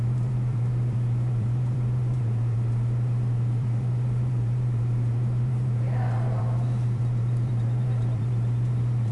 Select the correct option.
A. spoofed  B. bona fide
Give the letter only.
A